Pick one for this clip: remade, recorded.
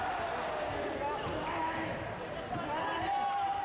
recorded